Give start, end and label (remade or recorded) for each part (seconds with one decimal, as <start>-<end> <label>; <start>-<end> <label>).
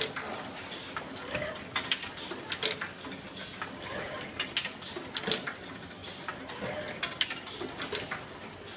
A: 0.0-8.8 recorded